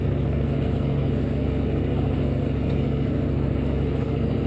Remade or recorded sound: remade